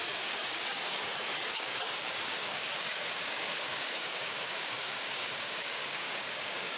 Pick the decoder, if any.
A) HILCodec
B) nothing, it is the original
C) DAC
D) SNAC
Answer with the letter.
C